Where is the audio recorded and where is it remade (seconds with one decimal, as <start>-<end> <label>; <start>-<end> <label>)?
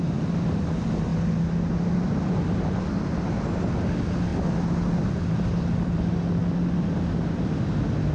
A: 0.0-8.1 recorded